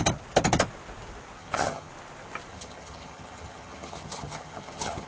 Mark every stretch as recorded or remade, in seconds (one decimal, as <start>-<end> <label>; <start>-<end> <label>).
0.0-1.4 recorded; 1.4-1.9 remade; 1.9-2.5 recorded; 2.5-5.1 remade